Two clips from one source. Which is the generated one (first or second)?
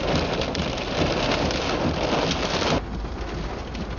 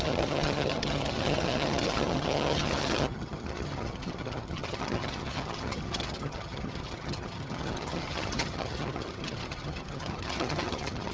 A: second